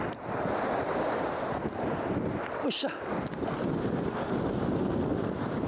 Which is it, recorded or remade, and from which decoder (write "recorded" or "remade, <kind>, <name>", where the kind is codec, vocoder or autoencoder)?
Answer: recorded